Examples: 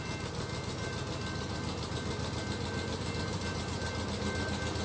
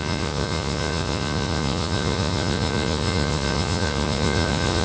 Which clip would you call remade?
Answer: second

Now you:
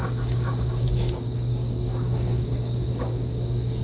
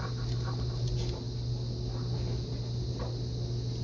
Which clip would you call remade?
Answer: first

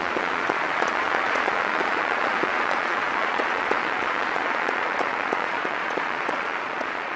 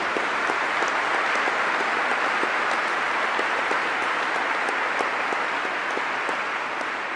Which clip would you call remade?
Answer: first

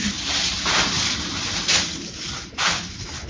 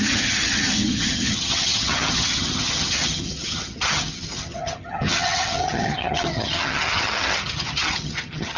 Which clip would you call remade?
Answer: second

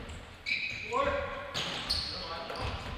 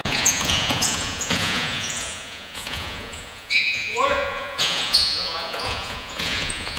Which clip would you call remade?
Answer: second